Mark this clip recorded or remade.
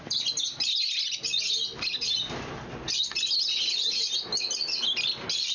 recorded